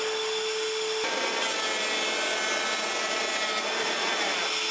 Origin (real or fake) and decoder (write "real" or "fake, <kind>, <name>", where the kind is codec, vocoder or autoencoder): real